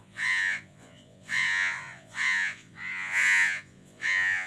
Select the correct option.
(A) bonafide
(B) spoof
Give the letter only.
B